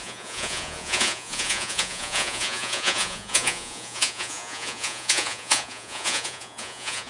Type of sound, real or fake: fake